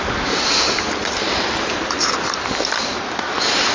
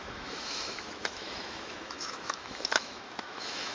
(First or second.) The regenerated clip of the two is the second